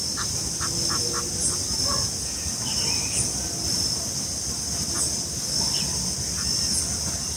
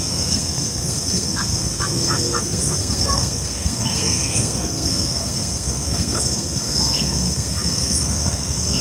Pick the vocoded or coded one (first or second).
second